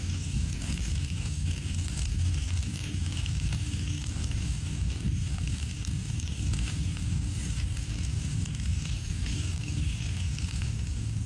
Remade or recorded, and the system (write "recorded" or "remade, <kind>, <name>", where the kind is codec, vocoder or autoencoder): remade, codec, DAC